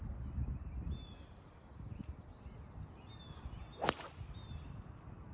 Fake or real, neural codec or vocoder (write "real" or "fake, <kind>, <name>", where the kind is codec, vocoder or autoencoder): real